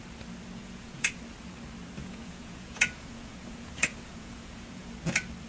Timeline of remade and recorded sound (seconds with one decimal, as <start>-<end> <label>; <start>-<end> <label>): 0.0-0.6 recorded; 0.6-1.2 remade; 1.2-2.0 recorded; 2.0-4.9 remade; 4.9-5.5 recorded